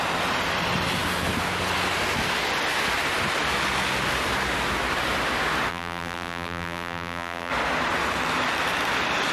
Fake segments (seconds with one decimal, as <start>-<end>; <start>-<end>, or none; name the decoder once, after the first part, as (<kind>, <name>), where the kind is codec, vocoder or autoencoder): 5.7-7.5 (vocoder, BigVGAN v2)